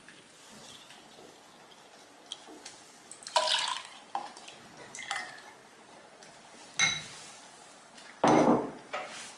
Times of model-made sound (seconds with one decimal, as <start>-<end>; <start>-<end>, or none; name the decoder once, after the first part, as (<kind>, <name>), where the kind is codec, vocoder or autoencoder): none